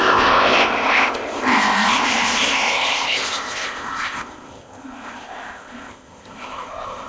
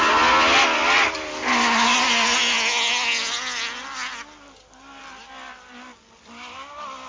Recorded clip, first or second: second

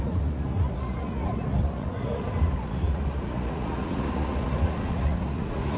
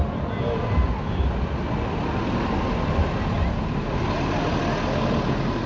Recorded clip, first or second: second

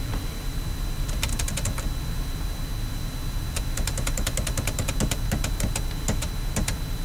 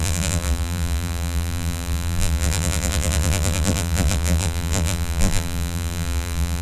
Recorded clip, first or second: first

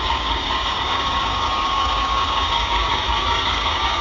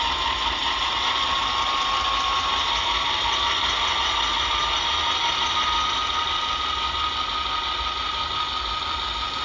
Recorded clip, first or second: second